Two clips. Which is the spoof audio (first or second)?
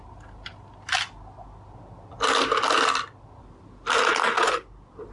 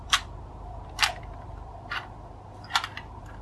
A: second